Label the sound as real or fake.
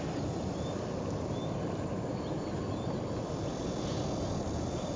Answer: real